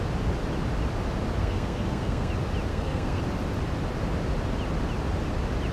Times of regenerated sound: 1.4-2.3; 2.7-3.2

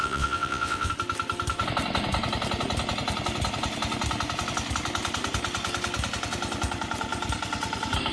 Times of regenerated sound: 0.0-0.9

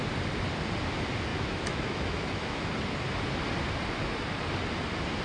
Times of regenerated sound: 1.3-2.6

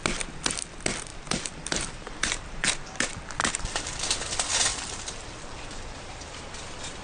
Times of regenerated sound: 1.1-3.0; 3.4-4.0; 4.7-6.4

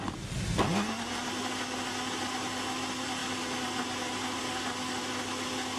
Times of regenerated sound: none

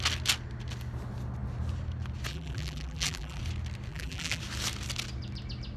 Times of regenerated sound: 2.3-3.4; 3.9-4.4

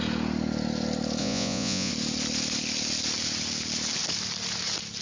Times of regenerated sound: 1.2-1.9

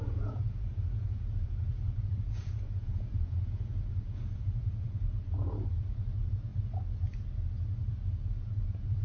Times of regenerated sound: 0.0-6.5; 7.9-9.0